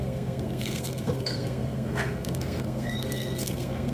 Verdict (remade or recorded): remade